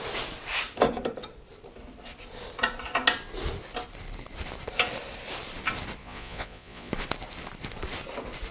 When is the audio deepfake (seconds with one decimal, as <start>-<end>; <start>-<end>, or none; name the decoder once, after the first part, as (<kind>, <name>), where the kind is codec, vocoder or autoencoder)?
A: 6.0-6.9 (vocoder, Vocos)